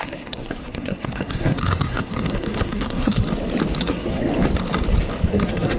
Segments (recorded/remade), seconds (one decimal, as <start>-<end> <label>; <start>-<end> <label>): 0.0-3.2 remade; 3.2-3.8 recorded; 3.8-4.3 remade; 4.3-5.3 recorded; 5.3-5.8 remade